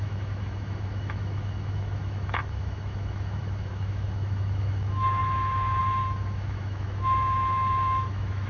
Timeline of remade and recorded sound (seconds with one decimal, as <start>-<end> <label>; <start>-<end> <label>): 0.0-8.5 remade